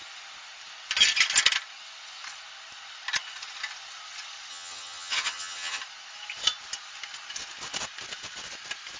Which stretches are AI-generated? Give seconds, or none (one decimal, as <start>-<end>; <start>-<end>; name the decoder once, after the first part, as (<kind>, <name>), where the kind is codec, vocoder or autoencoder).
4.5-5.8 (vocoder, HiFi-GAN)